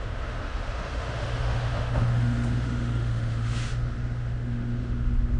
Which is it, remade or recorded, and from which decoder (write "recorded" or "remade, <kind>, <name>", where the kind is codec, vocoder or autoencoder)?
remade, autoencoder, DAC-VAE